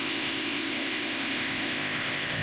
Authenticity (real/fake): fake